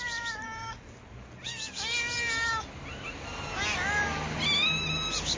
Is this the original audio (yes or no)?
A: yes